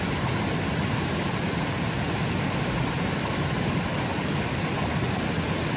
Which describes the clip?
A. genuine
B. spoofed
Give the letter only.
A